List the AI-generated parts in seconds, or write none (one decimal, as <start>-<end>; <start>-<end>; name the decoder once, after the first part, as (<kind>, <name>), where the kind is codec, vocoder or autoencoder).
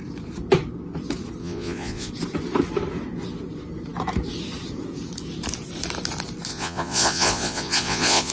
1.4-2.1 (vocoder, Vocos); 6.5-8.3